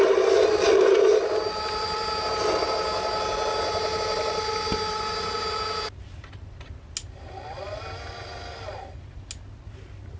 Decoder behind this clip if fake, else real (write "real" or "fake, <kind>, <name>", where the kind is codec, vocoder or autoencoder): real